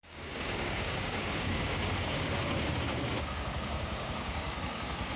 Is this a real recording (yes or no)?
no